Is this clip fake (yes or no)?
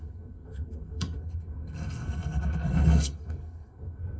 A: yes